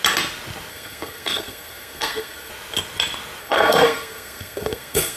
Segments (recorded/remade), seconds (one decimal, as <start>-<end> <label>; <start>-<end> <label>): 0.0-0.7 recorded; 0.7-2.5 remade; 2.5-3.4 recorded; 3.4-5.2 remade